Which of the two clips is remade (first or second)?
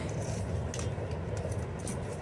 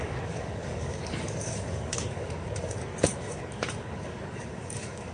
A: second